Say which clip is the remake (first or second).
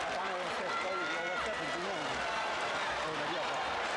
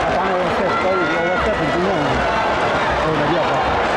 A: first